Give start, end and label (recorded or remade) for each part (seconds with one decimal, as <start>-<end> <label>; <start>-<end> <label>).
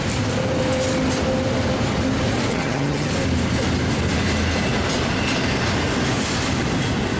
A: 0.0-2.5 recorded; 2.5-3.1 remade; 3.1-7.2 recorded